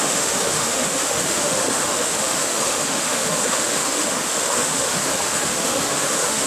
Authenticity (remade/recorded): remade